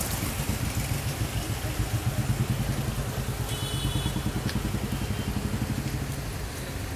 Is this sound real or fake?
real